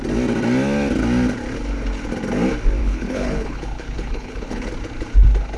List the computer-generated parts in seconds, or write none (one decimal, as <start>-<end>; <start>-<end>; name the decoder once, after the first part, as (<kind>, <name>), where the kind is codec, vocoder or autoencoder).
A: 2.8-4.7 (codec, HILCodec)